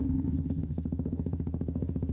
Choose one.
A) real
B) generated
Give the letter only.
B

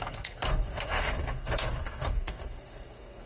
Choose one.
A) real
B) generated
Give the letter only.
B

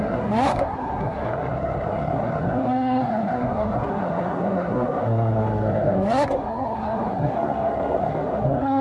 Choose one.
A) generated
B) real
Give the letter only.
A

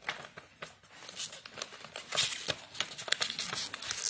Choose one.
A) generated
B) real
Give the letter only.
B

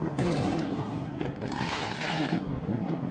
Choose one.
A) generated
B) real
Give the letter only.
A